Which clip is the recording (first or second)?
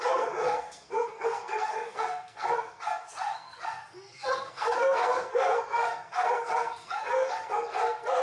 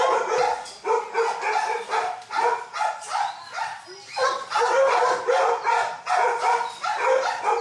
second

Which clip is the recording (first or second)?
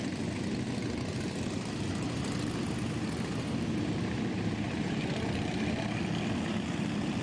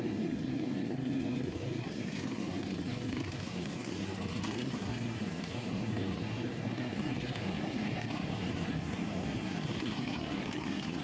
first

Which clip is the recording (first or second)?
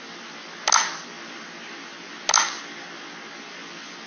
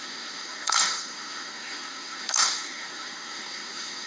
first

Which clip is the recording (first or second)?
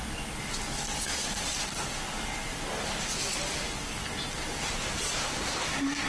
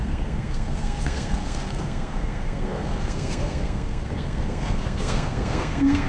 first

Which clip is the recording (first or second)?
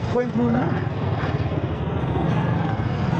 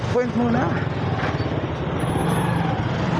second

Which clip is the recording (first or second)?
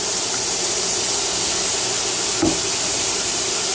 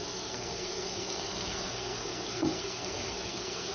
first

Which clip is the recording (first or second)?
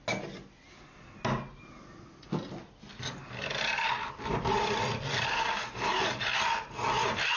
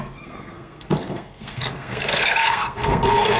first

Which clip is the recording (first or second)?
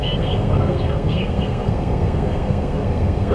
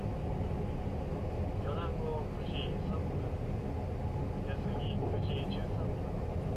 second